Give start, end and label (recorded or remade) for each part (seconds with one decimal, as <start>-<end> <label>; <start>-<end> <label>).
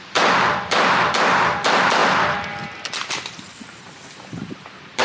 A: 0.0-5.0 recorded